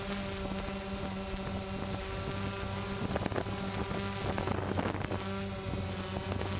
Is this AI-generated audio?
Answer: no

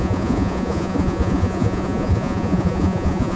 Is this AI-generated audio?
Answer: yes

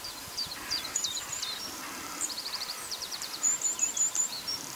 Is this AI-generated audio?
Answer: yes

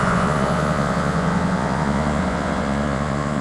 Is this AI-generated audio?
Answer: yes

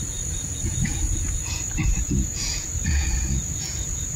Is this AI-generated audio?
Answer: yes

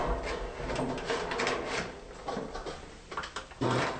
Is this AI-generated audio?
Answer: no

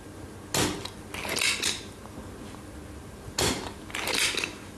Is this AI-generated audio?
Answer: no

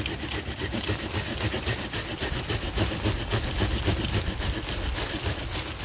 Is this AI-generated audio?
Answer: no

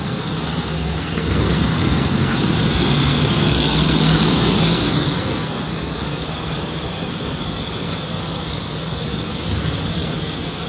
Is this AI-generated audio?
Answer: yes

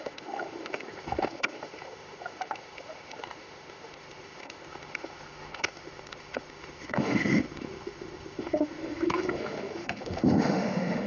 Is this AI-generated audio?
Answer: yes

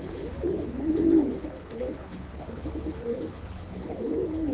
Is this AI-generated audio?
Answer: yes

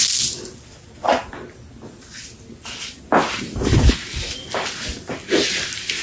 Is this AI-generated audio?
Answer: no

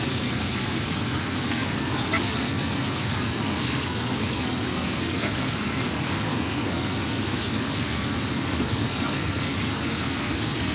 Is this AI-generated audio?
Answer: yes